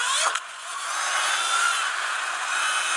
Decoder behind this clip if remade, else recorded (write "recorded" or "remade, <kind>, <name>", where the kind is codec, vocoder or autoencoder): remade, vocoder, Vocos